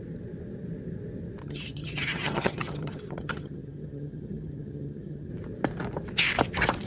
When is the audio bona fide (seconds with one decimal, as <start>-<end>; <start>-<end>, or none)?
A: 0.0-1.4; 5.3-6.9